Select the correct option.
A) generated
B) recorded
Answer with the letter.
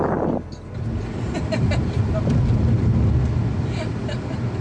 B